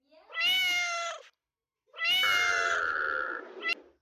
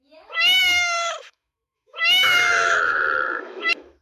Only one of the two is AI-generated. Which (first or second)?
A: second